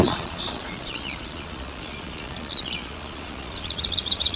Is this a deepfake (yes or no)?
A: yes